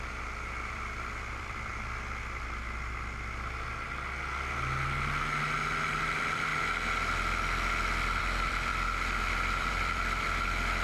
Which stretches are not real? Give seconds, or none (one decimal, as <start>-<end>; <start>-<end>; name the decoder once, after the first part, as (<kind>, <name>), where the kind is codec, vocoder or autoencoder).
0.0-1.7 (vocoder, BigVGAN v2); 5.9-6.5; 8.2-8.7; 9.2-10.8